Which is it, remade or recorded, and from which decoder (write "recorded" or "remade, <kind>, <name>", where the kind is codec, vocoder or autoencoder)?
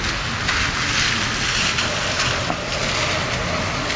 recorded